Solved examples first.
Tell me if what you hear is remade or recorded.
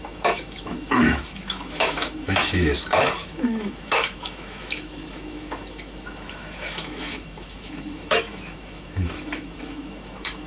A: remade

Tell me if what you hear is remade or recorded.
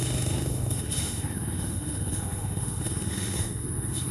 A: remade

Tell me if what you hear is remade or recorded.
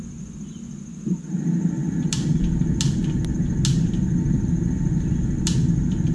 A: recorded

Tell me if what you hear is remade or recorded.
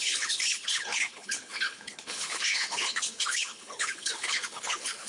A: remade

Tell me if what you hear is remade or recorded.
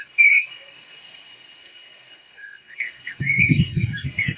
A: remade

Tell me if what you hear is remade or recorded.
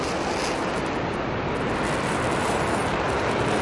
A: recorded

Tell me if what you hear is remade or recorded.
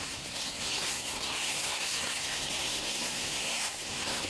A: remade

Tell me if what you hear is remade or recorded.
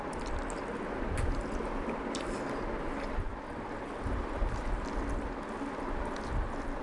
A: recorded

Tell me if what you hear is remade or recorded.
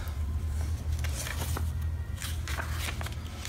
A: recorded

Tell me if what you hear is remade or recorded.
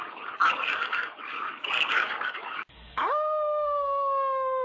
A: remade